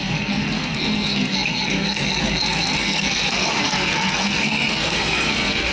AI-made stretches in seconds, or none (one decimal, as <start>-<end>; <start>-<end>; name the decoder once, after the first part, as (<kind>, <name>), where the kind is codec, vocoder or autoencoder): 0.0-5.7 (codec, SNAC)